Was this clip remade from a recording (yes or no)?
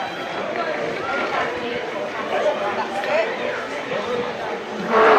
yes